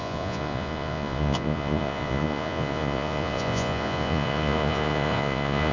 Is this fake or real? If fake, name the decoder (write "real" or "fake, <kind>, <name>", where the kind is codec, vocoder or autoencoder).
fake, vocoder, Vocos